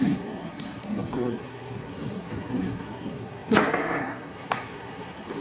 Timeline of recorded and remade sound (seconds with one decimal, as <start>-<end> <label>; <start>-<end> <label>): 0.0-5.4 remade